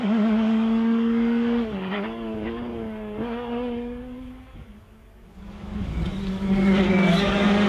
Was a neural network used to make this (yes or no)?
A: yes